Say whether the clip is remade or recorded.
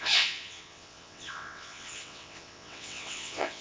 remade